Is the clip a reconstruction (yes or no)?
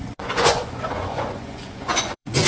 yes